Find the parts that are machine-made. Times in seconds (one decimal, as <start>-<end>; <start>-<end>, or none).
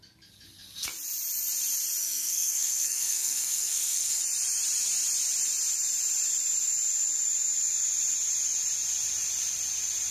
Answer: 2.0-4.2